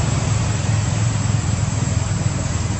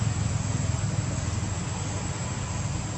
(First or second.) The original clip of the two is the second